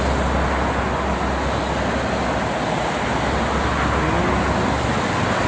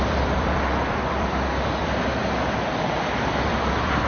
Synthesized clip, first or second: second